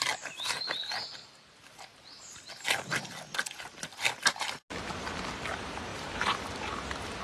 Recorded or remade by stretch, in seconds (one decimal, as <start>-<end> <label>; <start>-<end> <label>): 0.0-5.9 recorded; 5.9-6.4 remade; 6.4-7.2 recorded